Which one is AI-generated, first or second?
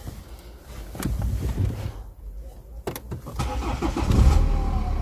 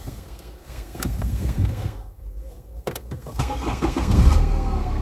second